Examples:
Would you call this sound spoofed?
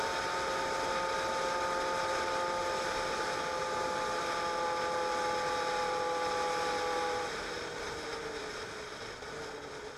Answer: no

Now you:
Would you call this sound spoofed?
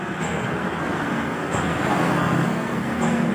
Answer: yes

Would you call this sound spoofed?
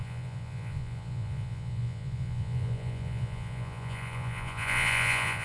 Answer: yes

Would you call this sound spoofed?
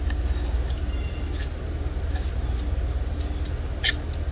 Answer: no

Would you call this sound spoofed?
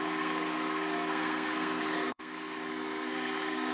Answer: yes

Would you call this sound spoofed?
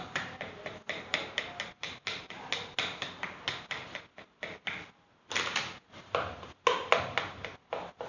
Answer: no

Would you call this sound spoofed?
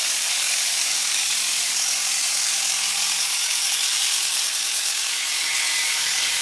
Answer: yes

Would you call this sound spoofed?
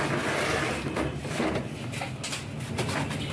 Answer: no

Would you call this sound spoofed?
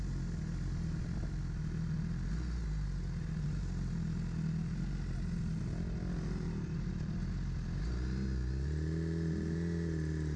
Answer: no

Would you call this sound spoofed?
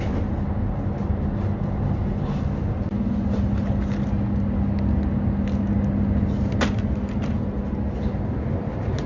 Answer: no